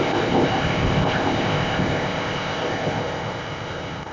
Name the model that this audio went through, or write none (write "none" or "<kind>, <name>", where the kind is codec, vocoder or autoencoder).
codec, ZipCodec